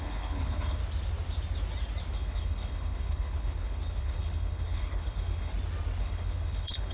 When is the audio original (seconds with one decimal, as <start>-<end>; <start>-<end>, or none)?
0.8-2.1; 5.5-6.0